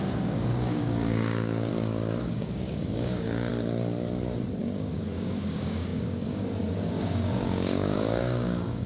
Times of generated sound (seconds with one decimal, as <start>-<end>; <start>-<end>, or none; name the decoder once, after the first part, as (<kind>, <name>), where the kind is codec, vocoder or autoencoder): 0.0-1.7 (codec, DAC); 2.3-3.5; 4.6-8.9